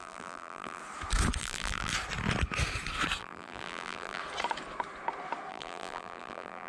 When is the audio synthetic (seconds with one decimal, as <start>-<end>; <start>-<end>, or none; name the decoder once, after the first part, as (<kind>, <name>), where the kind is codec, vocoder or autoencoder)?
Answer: 0.0-0.8 (vocoder, BigVGAN v2); 1.4-1.9; 3.2-4.2; 5.5-6.7